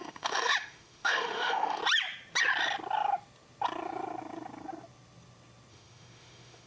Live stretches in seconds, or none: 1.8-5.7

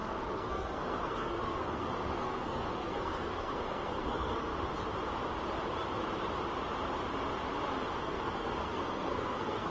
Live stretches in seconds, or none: 4.5-8.0

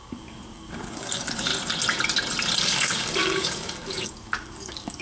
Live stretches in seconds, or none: 1.5-2.6